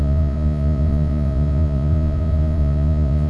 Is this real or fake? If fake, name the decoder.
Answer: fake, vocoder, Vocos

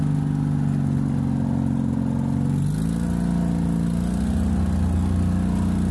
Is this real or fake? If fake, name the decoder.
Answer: real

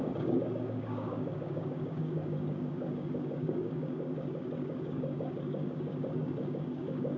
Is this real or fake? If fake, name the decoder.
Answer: fake, codec, DAC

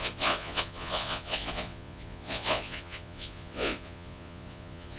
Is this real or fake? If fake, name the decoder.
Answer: fake, vocoder, Vocos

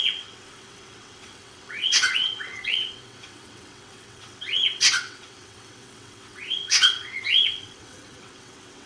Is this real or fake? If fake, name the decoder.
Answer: fake, vocoder, WaveNeXt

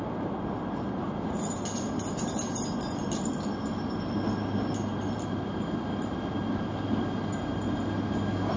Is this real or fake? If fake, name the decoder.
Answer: real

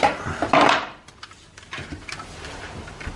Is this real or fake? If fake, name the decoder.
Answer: fake, vocoder, BigVGAN v2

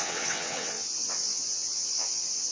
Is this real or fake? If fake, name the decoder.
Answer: fake, vocoder, WaveNeXt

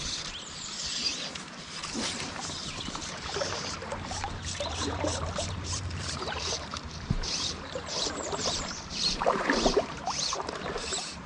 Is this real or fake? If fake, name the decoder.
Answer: fake, vocoder, BigVGAN v2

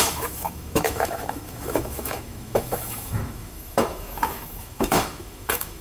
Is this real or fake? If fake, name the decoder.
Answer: fake, autoencoder, DAC-VAE